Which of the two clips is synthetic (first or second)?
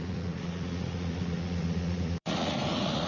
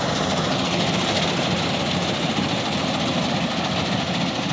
first